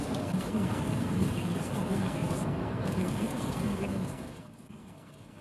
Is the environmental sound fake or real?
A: fake